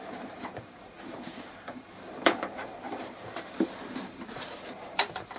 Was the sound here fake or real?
fake